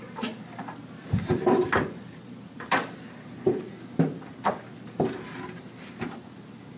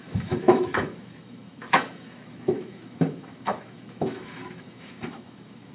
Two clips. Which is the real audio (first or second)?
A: first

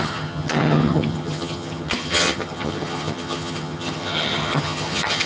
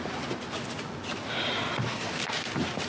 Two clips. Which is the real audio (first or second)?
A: second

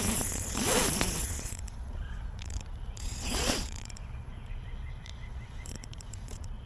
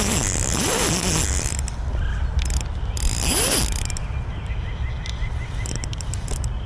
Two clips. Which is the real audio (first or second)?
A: second